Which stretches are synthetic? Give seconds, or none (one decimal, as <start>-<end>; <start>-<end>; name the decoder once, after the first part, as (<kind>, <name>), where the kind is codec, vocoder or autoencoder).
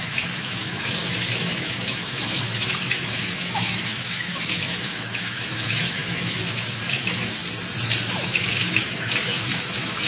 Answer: 0.0-7.4 (autoencoder, DAC-VAE); 8.2-10.1